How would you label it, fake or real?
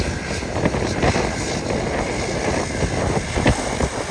real